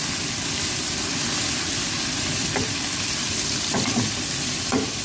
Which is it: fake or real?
fake